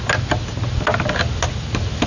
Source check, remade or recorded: recorded